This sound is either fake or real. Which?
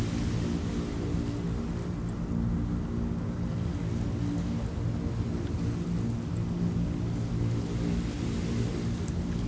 real